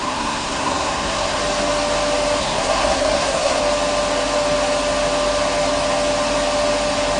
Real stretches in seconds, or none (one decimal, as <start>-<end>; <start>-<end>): 1.4-2.4; 3.6-7.2